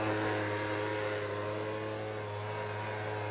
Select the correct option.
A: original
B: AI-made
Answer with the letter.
A